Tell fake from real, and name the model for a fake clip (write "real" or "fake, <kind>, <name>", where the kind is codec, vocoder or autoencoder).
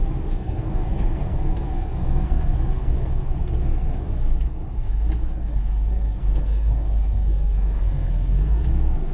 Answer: fake, codec, SNAC